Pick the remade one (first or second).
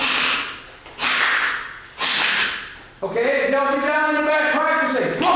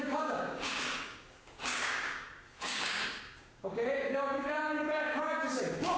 second